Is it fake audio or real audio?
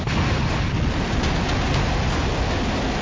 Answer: real